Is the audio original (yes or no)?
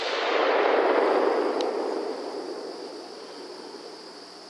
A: yes